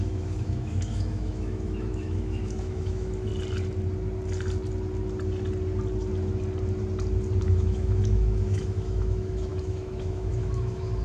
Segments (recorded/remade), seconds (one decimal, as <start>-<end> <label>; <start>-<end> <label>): 0.0-3.3 remade; 3.3-7.4 recorded; 7.4-11.0 remade